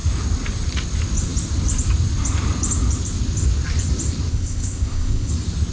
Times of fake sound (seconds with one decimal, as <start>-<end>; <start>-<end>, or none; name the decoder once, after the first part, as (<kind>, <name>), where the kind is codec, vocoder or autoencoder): 4.3-5.3 (codec, ZipCodec)